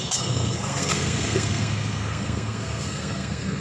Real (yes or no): no